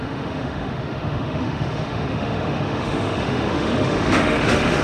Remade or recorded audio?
remade